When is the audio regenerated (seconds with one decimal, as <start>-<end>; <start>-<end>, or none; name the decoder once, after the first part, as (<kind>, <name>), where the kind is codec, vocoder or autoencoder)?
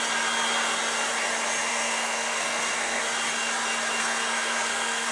1.7-3.0 (codec, SNAC); 4.0-5.1